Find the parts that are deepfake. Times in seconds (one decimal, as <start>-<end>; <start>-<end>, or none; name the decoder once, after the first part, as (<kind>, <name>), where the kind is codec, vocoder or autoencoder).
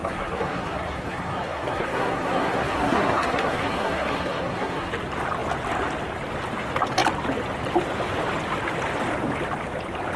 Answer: 0.0-4.9 (codec, SNAC)